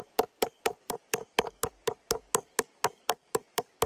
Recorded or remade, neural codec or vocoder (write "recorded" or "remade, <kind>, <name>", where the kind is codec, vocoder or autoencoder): remade, codec, DAC